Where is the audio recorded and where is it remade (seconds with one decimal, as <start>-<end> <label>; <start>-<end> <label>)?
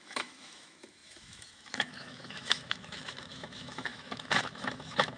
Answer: 0.0-5.2 remade